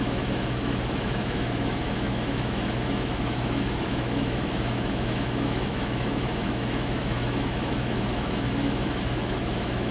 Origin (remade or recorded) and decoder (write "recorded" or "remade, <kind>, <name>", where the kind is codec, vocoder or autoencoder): remade, autoencoder, DAC-VAE